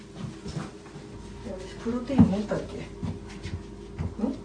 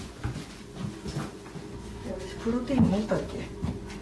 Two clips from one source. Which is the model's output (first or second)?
second